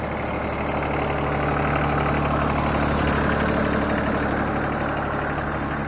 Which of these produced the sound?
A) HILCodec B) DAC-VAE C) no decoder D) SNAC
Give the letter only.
C